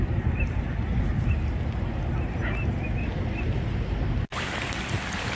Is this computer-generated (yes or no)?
no